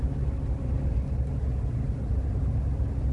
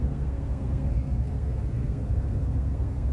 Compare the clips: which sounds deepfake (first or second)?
second